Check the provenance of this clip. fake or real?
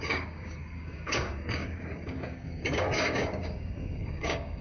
fake